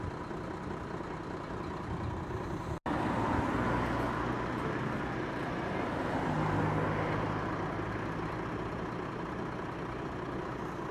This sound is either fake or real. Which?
real